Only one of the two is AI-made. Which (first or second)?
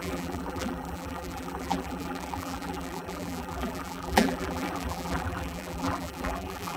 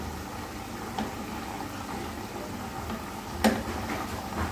first